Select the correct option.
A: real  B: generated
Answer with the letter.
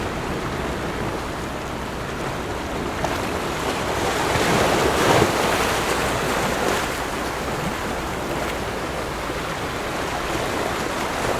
A